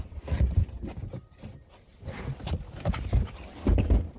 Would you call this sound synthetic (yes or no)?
no